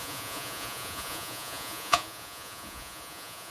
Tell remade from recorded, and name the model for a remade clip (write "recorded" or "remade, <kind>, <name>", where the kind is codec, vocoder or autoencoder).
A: remade, vocoder, Vocos